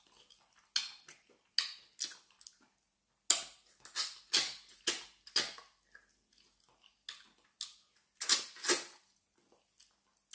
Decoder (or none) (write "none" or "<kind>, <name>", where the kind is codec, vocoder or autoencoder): none